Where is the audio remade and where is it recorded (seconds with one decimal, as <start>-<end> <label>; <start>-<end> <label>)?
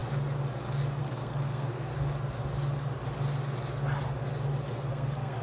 0.0-1.0 recorded; 1.0-1.9 remade; 1.9-4.9 recorded; 4.9-5.4 remade